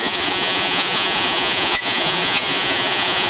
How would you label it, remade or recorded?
remade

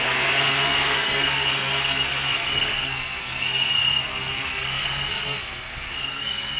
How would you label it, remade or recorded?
remade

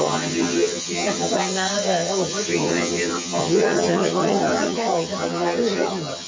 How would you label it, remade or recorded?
remade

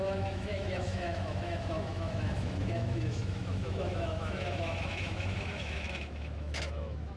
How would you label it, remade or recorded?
remade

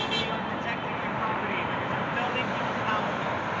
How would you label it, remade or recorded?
recorded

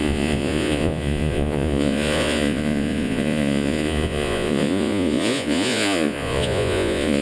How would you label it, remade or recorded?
remade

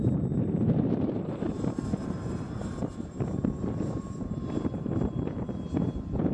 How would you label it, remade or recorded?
remade